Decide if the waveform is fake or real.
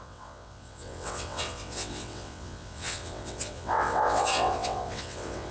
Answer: fake